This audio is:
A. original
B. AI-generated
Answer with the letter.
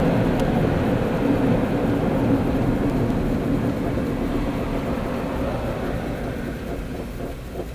A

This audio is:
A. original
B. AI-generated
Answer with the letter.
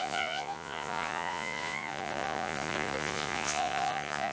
B